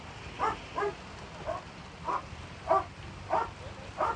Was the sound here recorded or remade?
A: recorded